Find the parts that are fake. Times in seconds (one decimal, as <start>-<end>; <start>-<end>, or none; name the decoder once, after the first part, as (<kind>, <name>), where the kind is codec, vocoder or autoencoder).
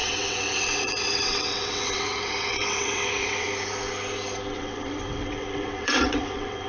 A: 0.0-3.5 (vocoder, WaveNeXt); 4.5-6.7